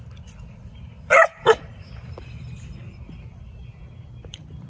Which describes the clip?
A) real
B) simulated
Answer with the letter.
A